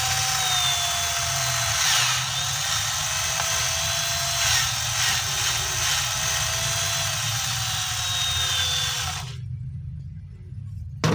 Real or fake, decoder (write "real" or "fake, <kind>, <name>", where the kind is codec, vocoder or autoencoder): real